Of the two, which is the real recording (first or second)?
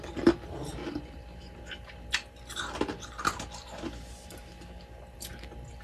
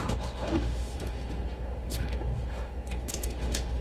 first